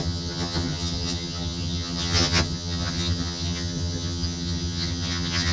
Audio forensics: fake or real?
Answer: fake